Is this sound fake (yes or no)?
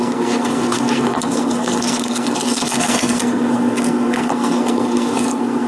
yes